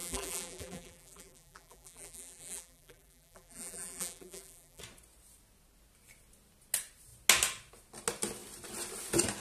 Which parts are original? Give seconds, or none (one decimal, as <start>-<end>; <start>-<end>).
4.8-9.4